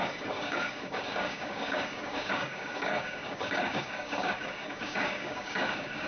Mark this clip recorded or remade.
remade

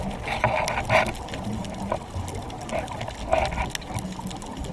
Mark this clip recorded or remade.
recorded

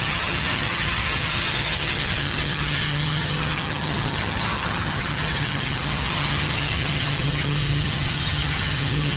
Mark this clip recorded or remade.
remade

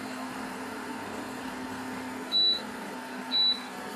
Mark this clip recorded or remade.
remade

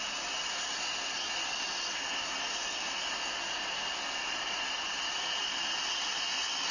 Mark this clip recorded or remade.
recorded